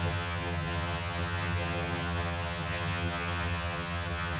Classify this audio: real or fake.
fake